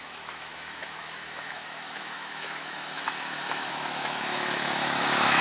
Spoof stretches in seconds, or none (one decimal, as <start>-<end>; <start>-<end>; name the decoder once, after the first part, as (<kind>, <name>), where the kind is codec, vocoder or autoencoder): 0.0-5.4 (autoencoder, DAC-VAE)